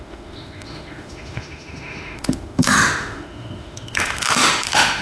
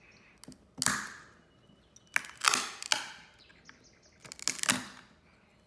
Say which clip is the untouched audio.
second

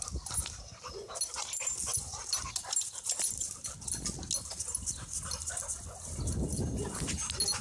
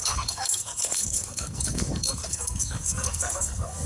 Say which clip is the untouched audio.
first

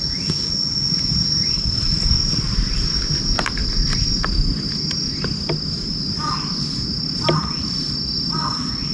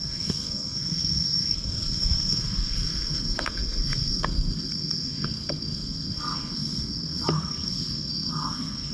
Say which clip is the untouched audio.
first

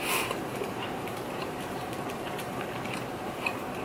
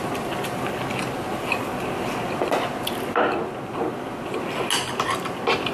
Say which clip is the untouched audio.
second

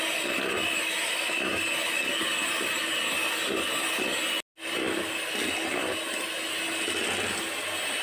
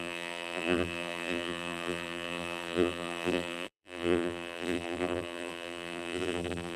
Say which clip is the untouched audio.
first